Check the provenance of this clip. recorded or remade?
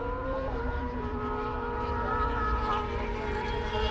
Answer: remade